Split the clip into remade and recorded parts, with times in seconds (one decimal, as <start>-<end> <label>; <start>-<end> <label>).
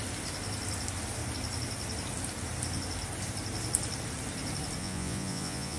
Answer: 0.0-4.8 recorded; 4.8-5.8 remade